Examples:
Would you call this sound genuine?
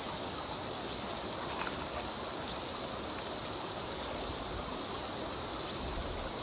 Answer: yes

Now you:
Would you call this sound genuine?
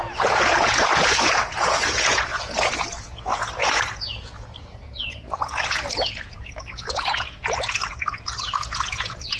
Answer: no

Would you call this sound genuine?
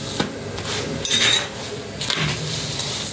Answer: yes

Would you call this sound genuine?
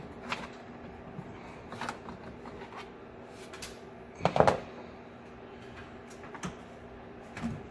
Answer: yes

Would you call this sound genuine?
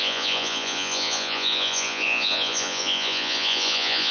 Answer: no